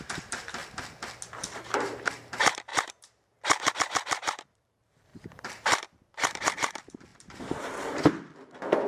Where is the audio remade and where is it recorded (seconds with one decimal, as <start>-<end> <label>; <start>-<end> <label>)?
0.0-0.6 remade; 0.6-1.4 recorded; 1.4-8.9 remade